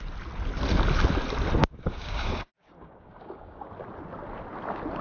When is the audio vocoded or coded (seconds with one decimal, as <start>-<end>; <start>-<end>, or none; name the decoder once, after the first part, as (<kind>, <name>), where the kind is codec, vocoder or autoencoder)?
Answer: 1.6-3.7 (codec, DAC)